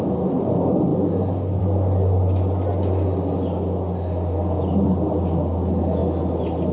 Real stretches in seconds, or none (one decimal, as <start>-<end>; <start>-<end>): 0.0-6.7